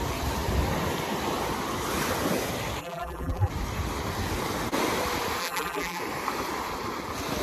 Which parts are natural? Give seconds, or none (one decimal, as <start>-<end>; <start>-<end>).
0.0-2.8; 3.5-5.4; 6.0-7.4